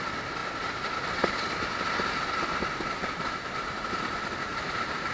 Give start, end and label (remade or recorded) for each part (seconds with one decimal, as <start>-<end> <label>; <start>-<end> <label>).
0.0-3.0 recorded; 3.0-4.1 remade; 4.1-4.5 recorded; 4.5-5.1 remade